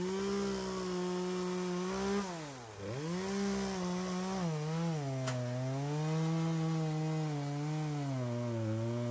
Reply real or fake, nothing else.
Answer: real